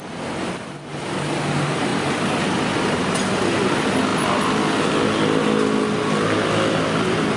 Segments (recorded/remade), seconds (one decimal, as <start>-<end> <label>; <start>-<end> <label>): 0.0-7.4 recorded